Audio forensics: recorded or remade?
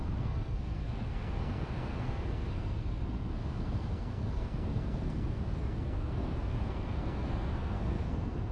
remade